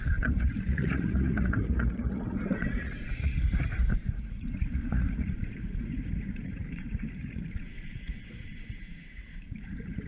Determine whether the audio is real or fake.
fake